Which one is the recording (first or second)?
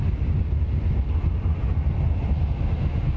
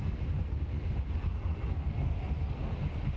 first